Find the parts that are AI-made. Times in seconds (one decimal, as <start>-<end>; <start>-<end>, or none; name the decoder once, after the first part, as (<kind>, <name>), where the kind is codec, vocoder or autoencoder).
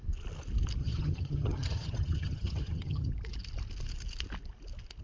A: 0.8-3.1 (vocoder, HiFi-GAN)